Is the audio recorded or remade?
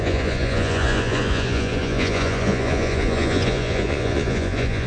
remade